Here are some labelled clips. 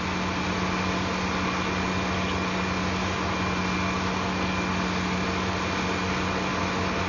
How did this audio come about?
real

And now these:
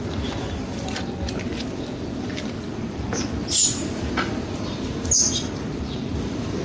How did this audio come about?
real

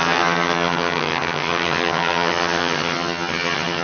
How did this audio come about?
fake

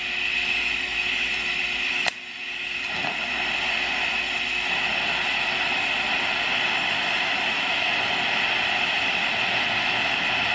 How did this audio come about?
real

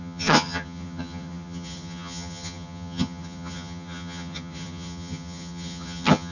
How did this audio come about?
fake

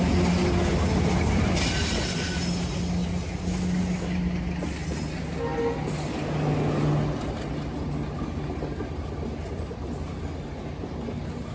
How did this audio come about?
real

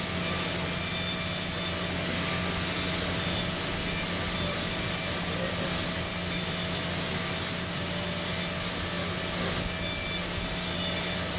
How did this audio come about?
real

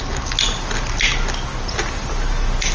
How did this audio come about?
real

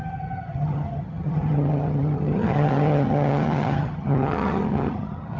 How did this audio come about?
fake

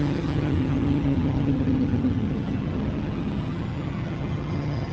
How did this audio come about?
fake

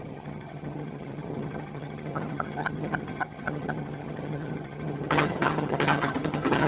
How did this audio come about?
fake